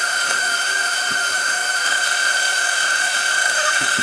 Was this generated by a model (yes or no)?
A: yes